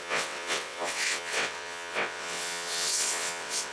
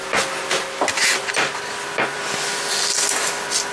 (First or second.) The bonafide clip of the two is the second